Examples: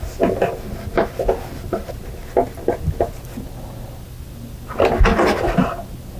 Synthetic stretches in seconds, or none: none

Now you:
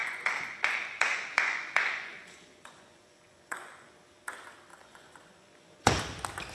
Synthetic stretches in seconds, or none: 0.0-3.9 (vocoder, Vocos); 4.7-6.0

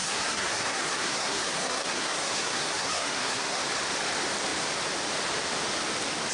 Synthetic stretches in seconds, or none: 0.0-3.6 (codec, SNAC)

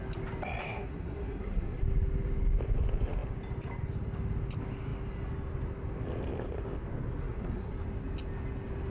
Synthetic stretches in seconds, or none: 0.6-1.8 (codec, SNAC); 7.2-7.7

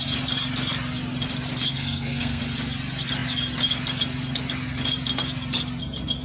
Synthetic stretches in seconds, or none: 1.7-2.4 (codec, SNAC)

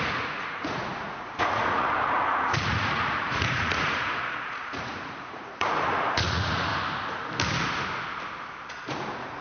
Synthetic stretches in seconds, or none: 0.0-6.7 (vocoder, Vocos); 8.7-9.4

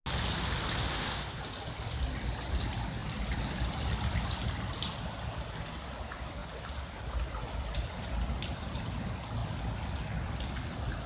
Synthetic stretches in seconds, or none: 0.9-1.4 (codec, SNAC)

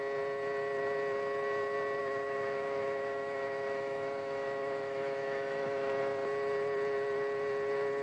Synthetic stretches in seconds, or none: 2.0-5.9 (autoencoder, DAC-VAE)